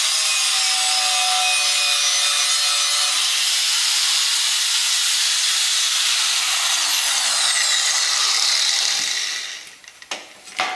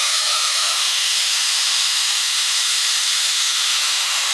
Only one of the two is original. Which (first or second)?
first